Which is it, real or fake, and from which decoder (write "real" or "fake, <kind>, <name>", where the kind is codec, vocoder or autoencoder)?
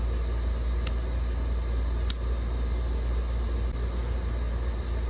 real